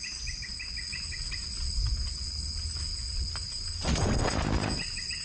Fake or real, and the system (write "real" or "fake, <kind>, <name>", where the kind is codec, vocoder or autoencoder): real